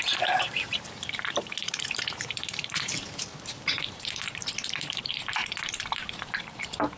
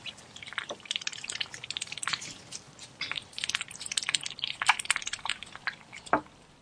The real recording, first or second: second